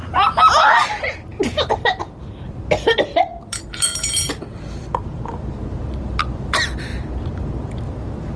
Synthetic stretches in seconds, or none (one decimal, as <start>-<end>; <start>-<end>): 0.7-8.4